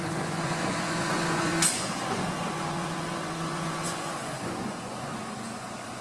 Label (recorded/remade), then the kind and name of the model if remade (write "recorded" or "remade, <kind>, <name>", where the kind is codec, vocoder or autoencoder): remade, vocoder, Vocos